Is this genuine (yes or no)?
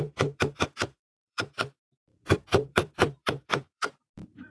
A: no